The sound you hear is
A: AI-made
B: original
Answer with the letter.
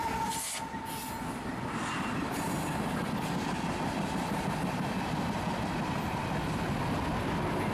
B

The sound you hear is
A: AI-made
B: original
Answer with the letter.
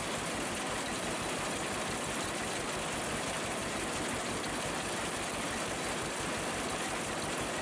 B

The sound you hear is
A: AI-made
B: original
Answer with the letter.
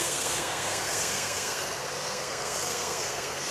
A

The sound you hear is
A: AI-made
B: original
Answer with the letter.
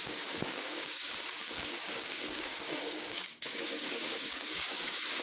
A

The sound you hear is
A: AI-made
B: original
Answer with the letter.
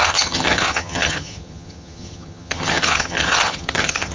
A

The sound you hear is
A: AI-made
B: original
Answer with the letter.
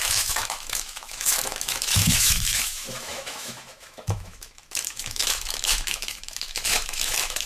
A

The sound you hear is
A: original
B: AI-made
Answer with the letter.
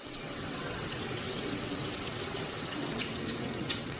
B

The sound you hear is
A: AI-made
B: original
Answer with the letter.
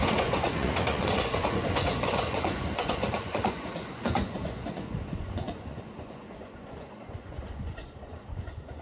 A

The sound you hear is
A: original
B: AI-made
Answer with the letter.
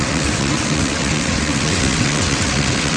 B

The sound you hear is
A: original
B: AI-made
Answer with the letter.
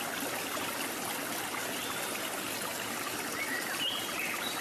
A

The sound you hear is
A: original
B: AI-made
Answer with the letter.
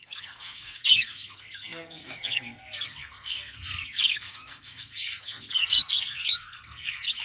B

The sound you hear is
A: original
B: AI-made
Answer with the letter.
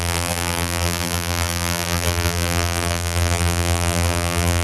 B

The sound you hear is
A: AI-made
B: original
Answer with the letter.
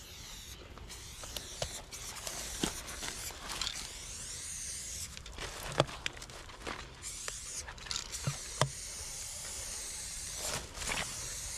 B